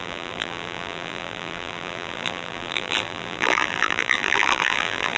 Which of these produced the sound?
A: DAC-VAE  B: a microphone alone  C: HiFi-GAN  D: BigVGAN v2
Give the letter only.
D